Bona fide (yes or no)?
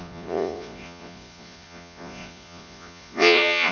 no